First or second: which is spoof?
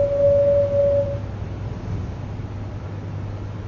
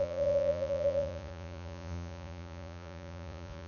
second